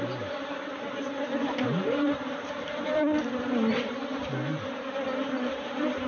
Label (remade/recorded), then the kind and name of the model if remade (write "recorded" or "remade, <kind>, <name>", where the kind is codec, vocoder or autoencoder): remade, vocoder, BigVGAN v2